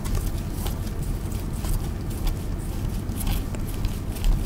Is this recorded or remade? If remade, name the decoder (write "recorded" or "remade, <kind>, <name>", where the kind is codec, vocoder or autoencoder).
recorded